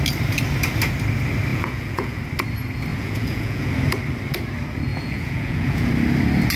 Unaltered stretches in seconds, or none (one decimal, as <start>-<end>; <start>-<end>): 0.0-1.5; 2.2-2.9; 3.7-4.9; 5.9-6.6